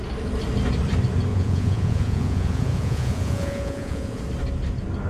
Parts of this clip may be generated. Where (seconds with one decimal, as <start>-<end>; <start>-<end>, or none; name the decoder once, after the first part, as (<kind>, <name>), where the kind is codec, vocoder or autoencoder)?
1.3-4.2 (vocoder, Vocos)